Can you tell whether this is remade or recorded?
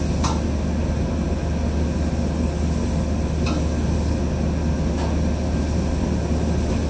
recorded